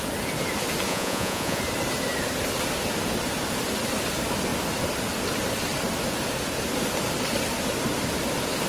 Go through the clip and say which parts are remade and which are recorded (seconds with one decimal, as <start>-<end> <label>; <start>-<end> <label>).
0.0-0.9 recorded; 0.9-1.6 remade; 1.6-8.7 recorded